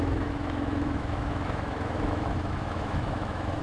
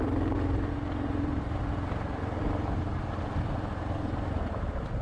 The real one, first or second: second